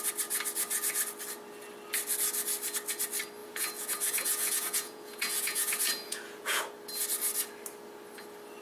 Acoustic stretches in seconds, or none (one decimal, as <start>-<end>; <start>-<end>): 0.0-3.4; 6.6-8.6